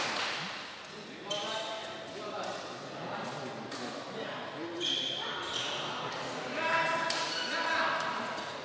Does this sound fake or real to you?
real